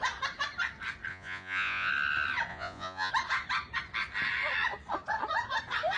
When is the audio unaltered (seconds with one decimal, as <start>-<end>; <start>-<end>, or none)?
0.0-1.1; 1.9-2.5; 3.1-6.0